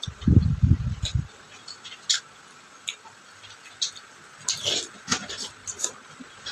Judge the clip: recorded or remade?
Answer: recorded